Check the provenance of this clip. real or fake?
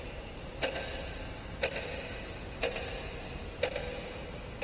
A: real